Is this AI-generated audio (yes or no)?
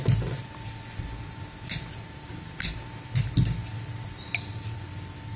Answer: no